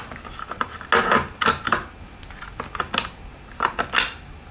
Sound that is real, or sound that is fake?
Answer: real